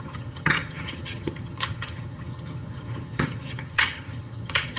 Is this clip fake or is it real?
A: fake